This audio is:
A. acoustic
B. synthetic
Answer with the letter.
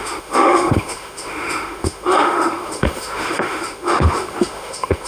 B